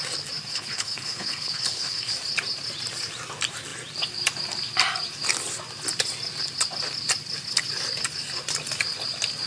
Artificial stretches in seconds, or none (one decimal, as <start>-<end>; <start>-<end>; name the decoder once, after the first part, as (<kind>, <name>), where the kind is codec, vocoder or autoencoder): 0.5-2.1 (codec, HILCodec)